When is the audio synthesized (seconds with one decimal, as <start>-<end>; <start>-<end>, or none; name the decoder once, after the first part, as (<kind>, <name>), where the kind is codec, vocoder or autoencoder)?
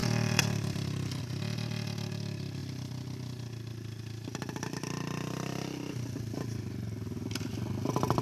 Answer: 0.0-1.2 (vocoder, BigVGAN v2); 2.6-7.5